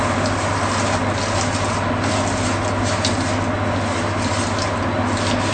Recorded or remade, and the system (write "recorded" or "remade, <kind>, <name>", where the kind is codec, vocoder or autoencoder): recorded